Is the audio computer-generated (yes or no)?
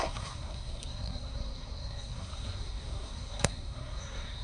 yes